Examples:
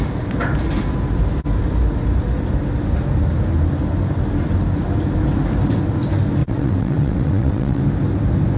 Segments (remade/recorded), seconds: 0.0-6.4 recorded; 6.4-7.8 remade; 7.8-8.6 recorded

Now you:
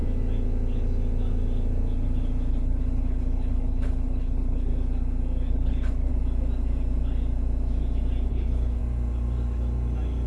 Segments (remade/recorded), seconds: 0.0-2.5 recorded; 2.5-4.7 remade; 4.7-5.5 recorded; 5.5-6.1 remade; 6.1-8.3 recorded; 8.3-8.8 remade; 8.8-10.3 recorded